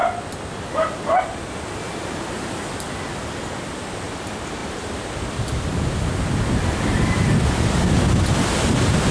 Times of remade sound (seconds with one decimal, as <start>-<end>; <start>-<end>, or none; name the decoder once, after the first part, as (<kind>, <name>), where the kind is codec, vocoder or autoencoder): none